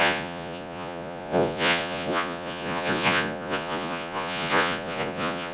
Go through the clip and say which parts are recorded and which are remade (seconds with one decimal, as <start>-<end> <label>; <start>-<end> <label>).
0.0-5.5 remade